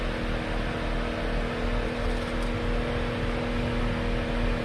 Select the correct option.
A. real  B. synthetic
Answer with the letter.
A